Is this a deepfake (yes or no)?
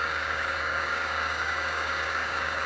yes